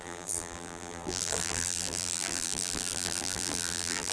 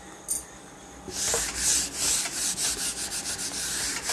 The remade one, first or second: first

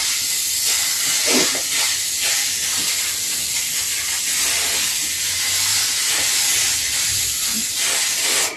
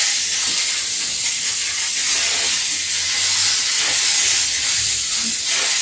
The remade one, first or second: first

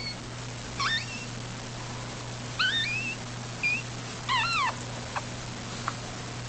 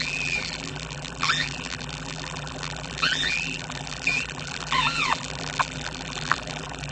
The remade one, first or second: second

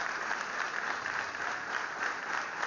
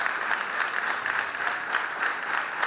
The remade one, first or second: first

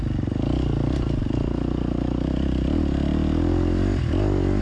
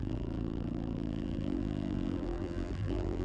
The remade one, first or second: second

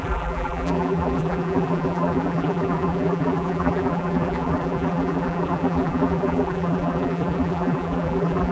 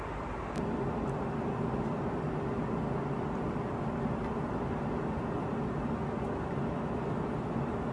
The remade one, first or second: first